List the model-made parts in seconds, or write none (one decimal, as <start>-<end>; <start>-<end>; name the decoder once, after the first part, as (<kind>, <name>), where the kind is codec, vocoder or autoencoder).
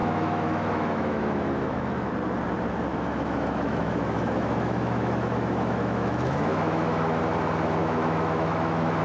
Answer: 0.0-2.1 (autoencoder, DAC-VAE); 2.9-7.2; 7.8-9.0